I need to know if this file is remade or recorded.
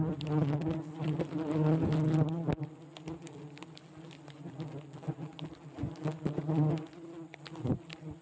recorded